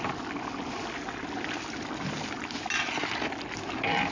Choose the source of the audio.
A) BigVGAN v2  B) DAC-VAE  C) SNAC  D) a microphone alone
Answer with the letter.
D